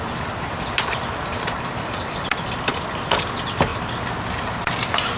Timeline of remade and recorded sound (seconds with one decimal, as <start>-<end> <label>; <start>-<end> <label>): 0.0-5.2 recorded